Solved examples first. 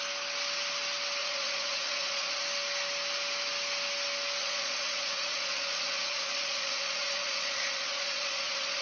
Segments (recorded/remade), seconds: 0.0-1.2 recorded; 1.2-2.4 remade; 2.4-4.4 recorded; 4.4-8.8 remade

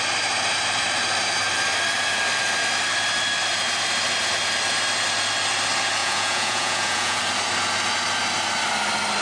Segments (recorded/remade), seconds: 0.0-6.0 recorded; 6.0-7.2 remade; 7.2-9.2 recorded

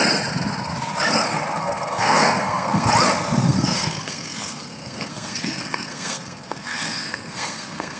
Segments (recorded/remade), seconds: 0.0-1.6 recorded; 1.6-2.9 remade; 2.9-3.4 recorded; 3.4-8.0 remade

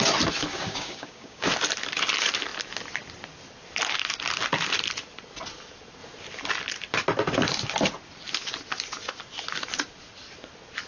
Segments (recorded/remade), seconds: 0.0-0.5 recorded; 0.5-1.5 remade; 1.5-10.9 recorded

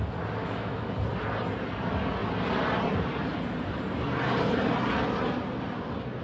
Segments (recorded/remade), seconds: 0.0-0.4 recorded; 0.4-1.0 remade; 1.0-6.2 recorded

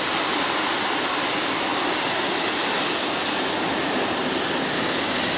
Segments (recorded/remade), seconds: 0.0-5.4 recorded